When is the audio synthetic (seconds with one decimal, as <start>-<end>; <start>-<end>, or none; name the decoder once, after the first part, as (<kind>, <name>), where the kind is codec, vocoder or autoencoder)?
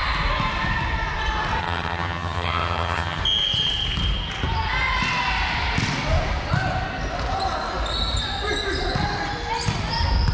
1.6-3.2 (vocoder, HiFi-GAN)